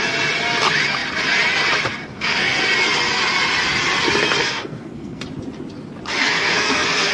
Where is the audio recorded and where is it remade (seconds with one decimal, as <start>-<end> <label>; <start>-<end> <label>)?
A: 0.0-2.1 recorded; 2.1-2.6 remade; 2.6-4.4 recorded; 4.4-5.2 remade; 5.2-6.2 recorded; 6.2-7.1 remade